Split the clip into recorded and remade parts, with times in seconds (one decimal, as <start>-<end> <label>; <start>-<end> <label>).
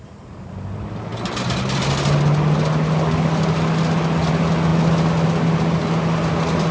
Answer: 0.0-6.7 recorded